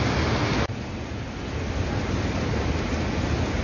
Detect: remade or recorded recorded